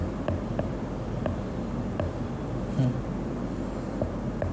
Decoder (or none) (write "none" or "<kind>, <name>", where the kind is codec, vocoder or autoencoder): none